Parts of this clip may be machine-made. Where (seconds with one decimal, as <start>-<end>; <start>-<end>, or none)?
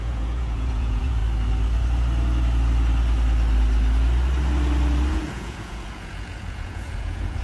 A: 0.0-1.2; 5.1-7.4